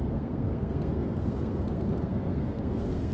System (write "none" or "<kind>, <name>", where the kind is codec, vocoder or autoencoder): codec, SNAC